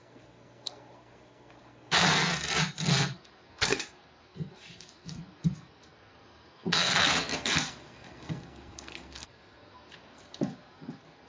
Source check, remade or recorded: remade